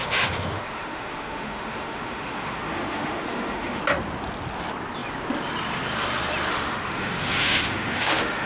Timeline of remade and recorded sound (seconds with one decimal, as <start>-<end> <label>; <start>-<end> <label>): 0.0-3.8 remade; 3.8-6.5 recorded; 6.5-8.5 remade